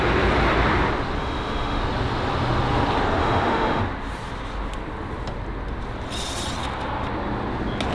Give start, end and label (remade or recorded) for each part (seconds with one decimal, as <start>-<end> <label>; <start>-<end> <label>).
0.0-1.2 recorded; 1.2-1.8 remade; 1.8-3.2 recorded; 3.2-3.8 remade; 3.8-7.9 recorded